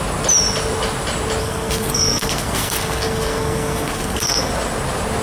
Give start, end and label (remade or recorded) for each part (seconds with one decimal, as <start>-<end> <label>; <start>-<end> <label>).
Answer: 0.0-1.4 recorded; 1.4-4.5 remade; 4.5-5.2 recorded